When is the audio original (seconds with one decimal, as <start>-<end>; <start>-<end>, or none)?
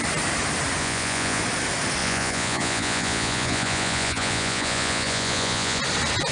0.0-0.8; 1.4-2.0; 5.8-6.3